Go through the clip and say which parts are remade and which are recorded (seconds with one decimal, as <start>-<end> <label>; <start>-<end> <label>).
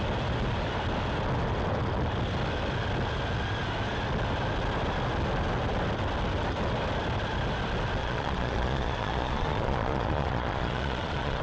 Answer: 0.0-8.0 recorded; 8.0-11.4 remade